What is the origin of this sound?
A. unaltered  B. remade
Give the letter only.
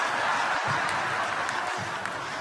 A